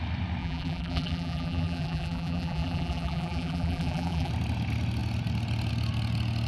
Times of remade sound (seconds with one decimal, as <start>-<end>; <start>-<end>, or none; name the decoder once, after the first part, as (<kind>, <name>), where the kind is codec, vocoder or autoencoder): 0.4-4.3 (vocoder, BigVGAN v2)